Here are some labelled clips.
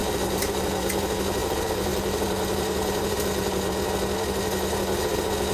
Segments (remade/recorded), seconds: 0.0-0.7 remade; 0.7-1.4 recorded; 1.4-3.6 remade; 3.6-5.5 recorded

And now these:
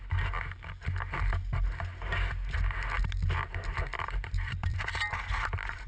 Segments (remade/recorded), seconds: 0.0-3.9 recorded; 3.9-4.9 remade; 4.9-5.9 recorded